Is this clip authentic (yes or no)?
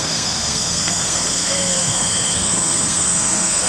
no